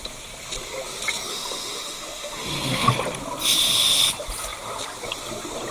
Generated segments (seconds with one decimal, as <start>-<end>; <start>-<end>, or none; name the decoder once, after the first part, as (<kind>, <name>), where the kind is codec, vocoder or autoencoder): 1.3-2.9 (autoencoder, DAC-VAE)